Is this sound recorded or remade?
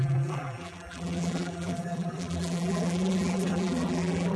remade